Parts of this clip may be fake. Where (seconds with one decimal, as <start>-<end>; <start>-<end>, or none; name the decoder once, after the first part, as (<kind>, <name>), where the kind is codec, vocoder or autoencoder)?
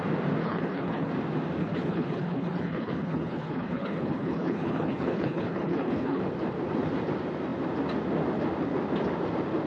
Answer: 0.4-1.1 (codec, HILCodec); 1.6-6.2